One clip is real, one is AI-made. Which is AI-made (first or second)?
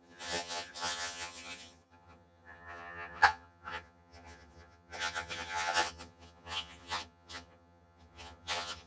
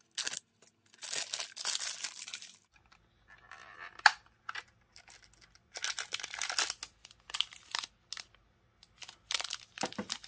first